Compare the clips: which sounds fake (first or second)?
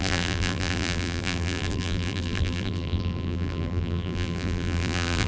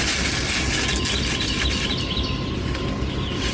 first